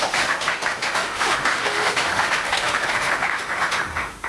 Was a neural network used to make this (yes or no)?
yes